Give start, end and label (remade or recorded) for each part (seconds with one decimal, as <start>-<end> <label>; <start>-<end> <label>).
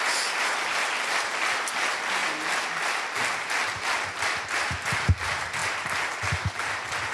0.0-2.2 recorded; 2.2-4.4 remade; 4.4-5.6 recorded; 5.6-6.1 remade; 6.1-7.1 recorded